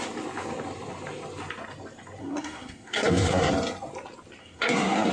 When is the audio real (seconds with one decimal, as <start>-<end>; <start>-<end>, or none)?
0.0-2.2; 3.5-4.4